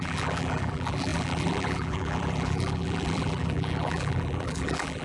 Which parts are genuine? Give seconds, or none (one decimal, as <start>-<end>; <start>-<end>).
none